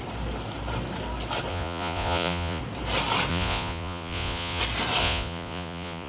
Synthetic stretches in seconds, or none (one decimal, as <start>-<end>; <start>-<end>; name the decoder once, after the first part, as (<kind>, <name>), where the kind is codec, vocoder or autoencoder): 1.5-2.6 (vocoder, Vocos); 3.3-4.6; 5.0-6.1